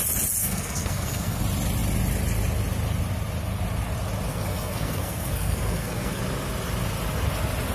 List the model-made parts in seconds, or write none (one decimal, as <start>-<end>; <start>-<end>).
0.4-1.4; 4.3-6.2